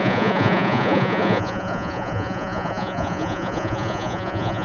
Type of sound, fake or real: fake